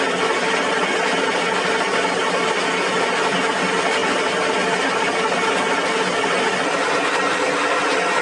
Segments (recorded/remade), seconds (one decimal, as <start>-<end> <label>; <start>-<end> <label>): 0.0-8.2 recorded